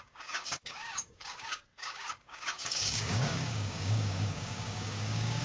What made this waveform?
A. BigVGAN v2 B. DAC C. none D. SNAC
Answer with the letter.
B